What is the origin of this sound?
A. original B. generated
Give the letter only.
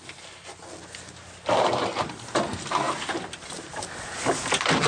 A